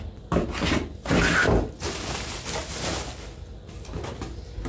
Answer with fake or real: real